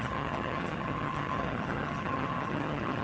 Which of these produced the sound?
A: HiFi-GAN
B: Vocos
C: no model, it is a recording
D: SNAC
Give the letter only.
A